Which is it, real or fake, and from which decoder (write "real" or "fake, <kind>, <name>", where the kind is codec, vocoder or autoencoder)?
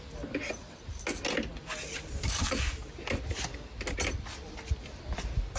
real